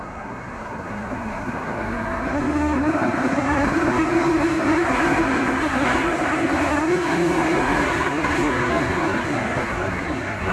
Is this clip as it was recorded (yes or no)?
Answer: no